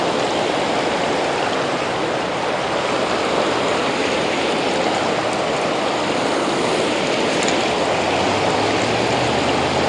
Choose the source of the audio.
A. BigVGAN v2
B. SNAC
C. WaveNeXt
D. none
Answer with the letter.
D